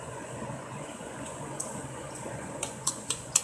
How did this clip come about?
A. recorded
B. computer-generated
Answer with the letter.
B